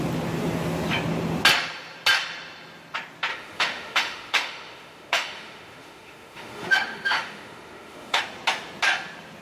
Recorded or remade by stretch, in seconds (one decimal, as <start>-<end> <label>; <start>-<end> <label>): 0.0-3.3 recorded; 3.3-8.2 remade; 8.2-9.4 recorded